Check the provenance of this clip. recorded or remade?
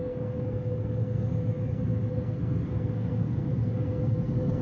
remade